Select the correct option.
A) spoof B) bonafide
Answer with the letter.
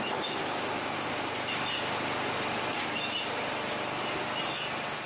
B